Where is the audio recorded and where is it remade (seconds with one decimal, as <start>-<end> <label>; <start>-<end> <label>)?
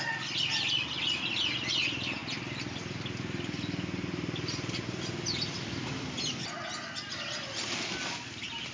0.0-8.7 recorded